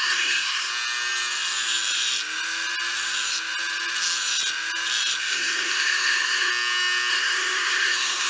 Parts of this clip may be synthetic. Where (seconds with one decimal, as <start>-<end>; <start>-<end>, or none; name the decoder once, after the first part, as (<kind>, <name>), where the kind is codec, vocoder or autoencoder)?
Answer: 0.0-0.7 (codec, SNAC); 5.2-6.5; 7.1-8.3